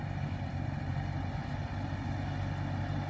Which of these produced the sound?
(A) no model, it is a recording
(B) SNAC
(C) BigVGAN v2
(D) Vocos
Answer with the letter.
A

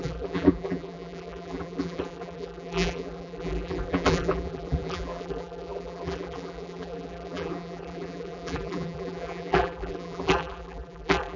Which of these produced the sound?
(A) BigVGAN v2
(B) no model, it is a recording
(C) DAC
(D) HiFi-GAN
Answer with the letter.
A